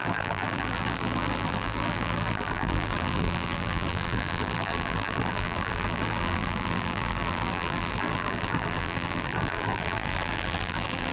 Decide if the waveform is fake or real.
fake